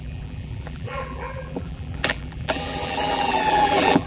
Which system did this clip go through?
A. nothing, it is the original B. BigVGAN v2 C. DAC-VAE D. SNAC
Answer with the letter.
B